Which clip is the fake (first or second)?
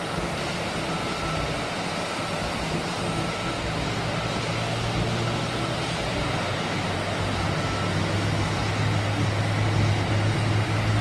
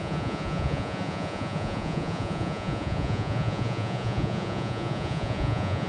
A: second